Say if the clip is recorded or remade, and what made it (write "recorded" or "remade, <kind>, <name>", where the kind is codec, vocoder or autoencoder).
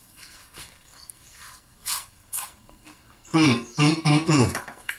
remade, codec, SNAC